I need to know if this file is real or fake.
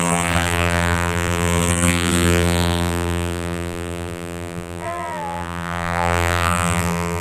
fake